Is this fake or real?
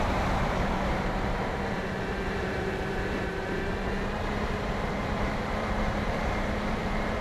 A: fake